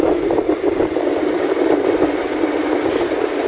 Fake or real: real